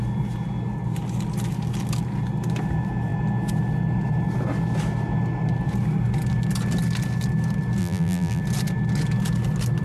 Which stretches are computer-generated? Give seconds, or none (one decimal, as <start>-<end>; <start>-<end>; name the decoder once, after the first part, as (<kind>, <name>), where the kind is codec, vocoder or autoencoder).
7.8-8.4 (vocoder, BigVGAN v2)